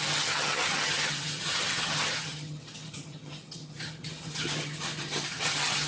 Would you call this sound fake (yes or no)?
yes